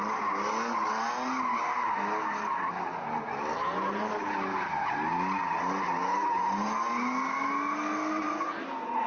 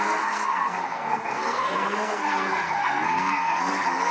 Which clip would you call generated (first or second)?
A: second